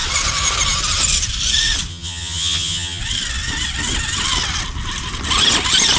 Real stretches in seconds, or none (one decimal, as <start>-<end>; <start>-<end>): 0.0-1.9; 3.0-6.0